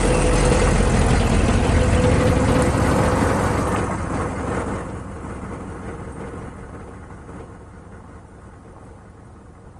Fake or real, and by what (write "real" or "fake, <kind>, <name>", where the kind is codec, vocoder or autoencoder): real